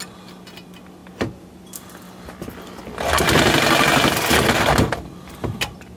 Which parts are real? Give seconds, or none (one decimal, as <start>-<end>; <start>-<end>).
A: 0.0-6.0